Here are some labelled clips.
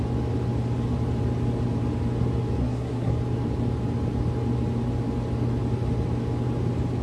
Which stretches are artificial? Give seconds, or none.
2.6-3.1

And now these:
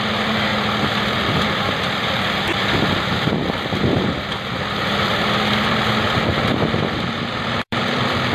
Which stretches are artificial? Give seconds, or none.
0.0-0.5; 1.1-8.3

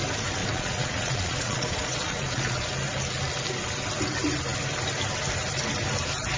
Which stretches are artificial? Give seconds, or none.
0.4-2.7

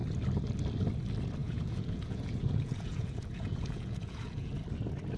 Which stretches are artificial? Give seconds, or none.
1.4-4.5

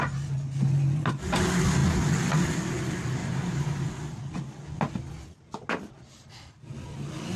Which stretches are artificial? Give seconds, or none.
3.2-3.9